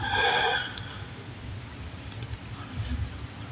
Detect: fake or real real